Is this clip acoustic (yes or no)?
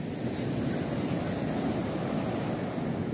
yes